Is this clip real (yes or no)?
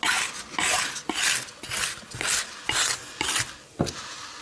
yes